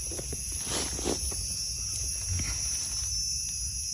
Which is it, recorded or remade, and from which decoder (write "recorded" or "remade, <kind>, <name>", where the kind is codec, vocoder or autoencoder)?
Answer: recorded